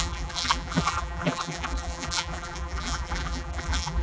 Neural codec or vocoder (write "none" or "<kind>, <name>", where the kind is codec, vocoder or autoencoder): vocoder, BigVGAN v2